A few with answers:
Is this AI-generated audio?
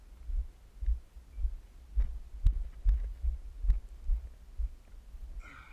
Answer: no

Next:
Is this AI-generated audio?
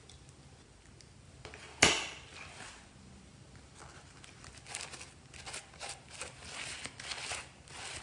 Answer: no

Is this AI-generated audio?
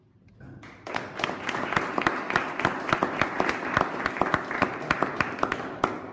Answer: no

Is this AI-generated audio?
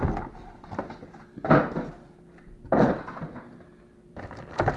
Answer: no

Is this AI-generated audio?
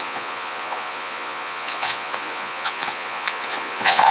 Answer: yes